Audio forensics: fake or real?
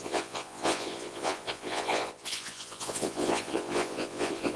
fake